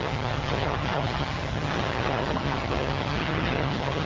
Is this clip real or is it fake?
fake